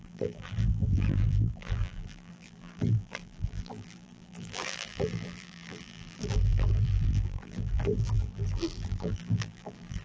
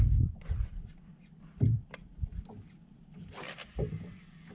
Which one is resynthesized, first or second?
first